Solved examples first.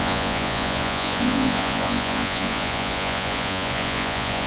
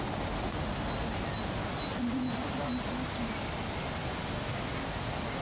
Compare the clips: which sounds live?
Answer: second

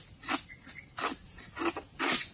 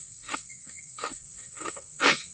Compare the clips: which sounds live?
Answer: first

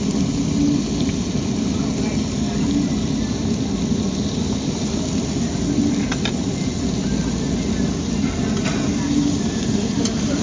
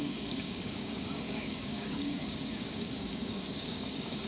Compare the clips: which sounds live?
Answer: first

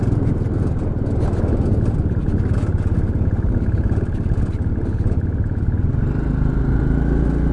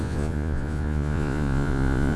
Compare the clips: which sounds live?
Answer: first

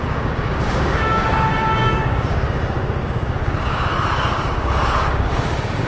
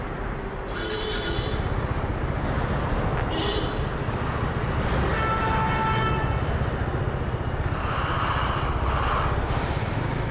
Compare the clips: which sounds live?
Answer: second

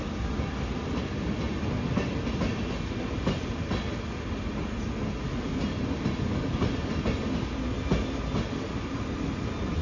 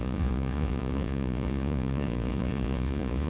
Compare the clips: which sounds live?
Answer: first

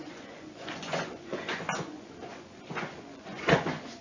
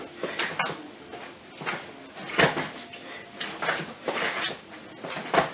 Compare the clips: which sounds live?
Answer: second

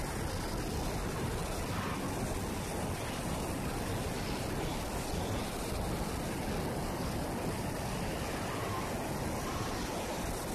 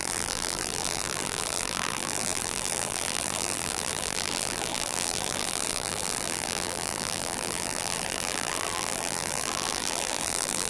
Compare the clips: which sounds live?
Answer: first